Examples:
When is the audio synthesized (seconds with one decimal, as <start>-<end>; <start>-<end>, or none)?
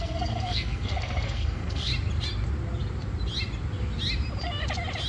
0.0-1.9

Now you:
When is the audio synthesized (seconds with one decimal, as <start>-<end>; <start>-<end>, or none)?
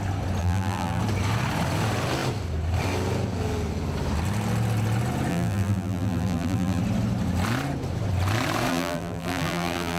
0.4-1.0; 5.3-6.8; 8.7-10.0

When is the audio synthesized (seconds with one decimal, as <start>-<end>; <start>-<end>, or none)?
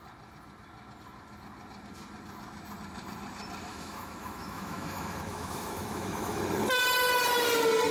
3.7-6.4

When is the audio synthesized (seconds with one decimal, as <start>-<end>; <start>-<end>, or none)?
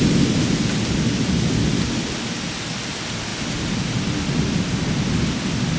none